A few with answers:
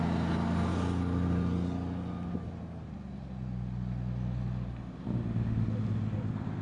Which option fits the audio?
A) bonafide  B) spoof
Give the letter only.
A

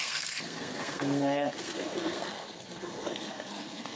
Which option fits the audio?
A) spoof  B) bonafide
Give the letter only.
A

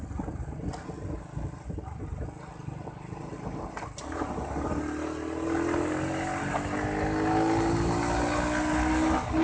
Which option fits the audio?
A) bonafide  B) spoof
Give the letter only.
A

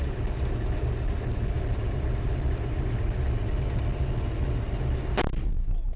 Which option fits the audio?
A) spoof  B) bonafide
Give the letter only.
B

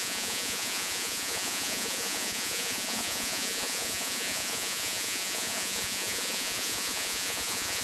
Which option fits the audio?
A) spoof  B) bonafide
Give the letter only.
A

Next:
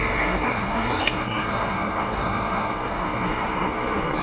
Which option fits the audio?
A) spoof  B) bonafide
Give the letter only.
A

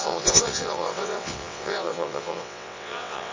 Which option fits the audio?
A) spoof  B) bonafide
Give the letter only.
A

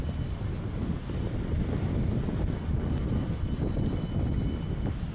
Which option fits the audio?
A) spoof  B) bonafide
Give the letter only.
B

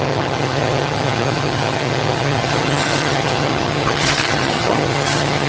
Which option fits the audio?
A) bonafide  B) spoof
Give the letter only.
B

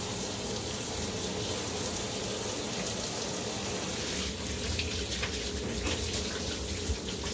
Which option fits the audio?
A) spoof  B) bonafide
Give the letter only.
B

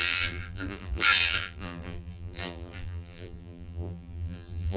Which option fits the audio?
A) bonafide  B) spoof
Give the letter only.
B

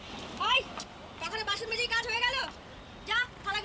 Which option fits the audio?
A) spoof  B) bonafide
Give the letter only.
A